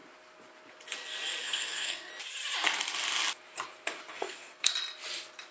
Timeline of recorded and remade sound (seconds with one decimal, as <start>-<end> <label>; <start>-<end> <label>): 0.0-1.4 recorded; 1.4-2.1 remade; 2.1-4.1 recorded; 4.1-4.7 remade; 4.7-5.5 recorded

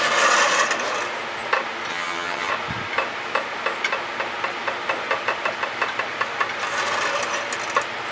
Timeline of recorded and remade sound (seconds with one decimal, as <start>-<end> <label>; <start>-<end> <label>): 0.0-1.9 recorded; 1.9-2.5 remade; 2.5-8.1 recorded

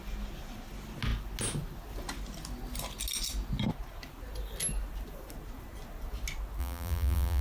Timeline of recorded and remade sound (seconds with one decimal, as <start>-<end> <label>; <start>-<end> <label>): 0.0-6.6 recorded; 6.6-7.4 remade